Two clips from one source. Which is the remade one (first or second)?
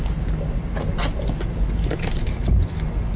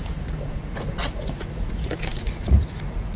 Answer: second